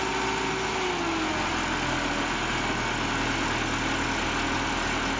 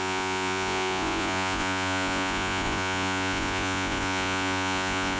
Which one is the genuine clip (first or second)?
first